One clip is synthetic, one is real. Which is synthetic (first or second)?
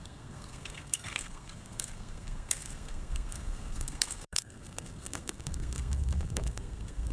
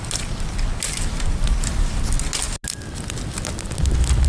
first